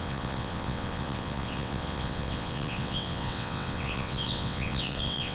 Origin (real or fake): fake